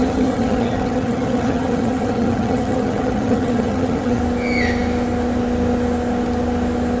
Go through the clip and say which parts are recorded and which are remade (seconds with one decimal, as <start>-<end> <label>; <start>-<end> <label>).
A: 0.0-4.2 remade; 4.2-7.0 recorded